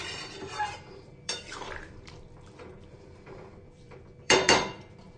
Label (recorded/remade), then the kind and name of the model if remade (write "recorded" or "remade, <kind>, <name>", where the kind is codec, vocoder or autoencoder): remade, vocoder, BigVGAN v2